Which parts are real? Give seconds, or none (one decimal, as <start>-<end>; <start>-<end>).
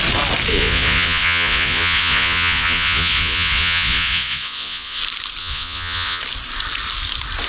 0.0-0.5; 5.0-5.4; 6.2-7.5